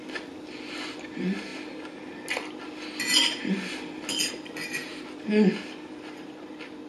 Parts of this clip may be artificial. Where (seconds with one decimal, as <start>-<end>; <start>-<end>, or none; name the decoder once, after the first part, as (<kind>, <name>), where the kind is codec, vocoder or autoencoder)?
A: none